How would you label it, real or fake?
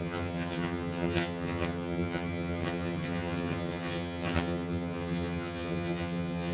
fake